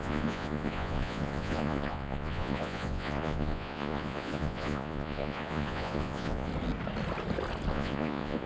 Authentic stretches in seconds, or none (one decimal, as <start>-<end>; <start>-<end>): 6.5-7.7